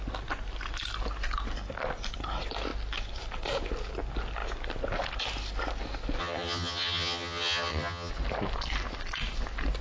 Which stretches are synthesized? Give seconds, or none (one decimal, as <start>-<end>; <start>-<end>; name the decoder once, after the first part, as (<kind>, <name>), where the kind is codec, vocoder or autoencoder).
6.2-8.1 (vocoder, HiFi-GAN)